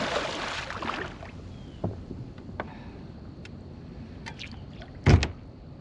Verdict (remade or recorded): recorded